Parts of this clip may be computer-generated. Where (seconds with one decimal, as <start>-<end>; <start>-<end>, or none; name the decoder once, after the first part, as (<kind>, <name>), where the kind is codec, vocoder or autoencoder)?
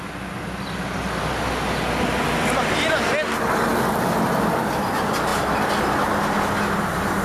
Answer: none